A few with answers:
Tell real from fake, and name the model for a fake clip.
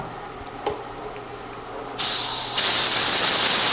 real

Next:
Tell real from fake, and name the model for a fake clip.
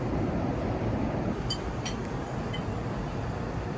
real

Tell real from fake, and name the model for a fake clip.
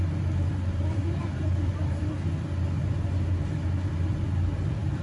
real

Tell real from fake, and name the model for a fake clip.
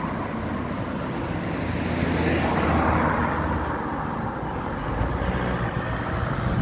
real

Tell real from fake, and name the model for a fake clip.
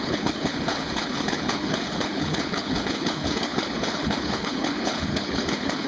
fake, codec, HILCodec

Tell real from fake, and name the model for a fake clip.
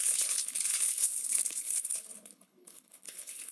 fake, codec, HILCodec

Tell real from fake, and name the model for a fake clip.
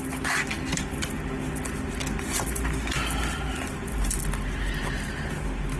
real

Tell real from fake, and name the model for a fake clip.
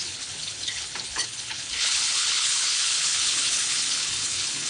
fake, codec, HILCodec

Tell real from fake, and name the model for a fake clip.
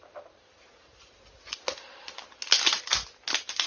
real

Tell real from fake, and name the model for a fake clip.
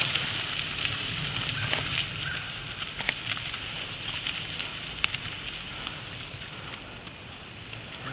real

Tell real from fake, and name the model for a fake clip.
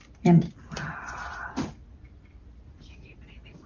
real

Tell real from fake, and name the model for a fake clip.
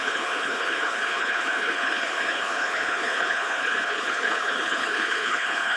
fake, codec, HILCodec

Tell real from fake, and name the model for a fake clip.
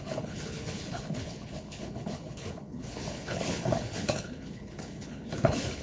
fake, codec, HILCodec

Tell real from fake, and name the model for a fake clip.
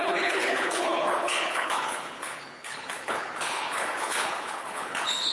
fake, codec, HILCodec